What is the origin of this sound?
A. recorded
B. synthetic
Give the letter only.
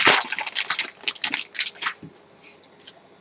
A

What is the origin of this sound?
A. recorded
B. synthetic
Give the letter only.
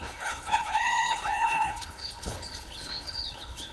B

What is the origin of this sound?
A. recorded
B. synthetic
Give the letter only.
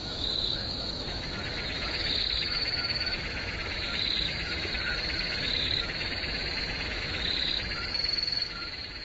B